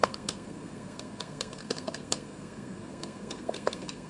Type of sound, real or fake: fake